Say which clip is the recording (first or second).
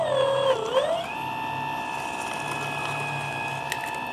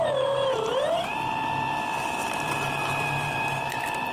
first